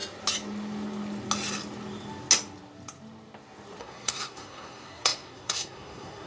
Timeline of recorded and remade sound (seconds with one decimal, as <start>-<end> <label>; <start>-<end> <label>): 0.0-3.8 recorded; 3.8-6.3 remade